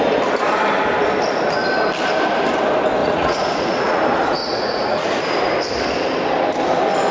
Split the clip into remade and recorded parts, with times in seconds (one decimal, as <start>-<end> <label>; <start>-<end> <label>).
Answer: 0.0-3.0 recorded; 3.0-4.0 remade; 4.0-4.4 recorded; 4.4-5.2 remade; 5.2-7.1 recorded